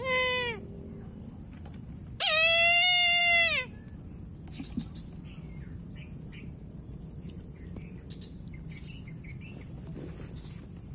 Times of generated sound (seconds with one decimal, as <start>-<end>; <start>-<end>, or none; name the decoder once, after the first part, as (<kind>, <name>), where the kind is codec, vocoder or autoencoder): none